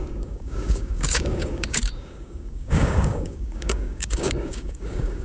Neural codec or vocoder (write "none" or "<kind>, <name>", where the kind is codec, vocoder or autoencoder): codec, DAC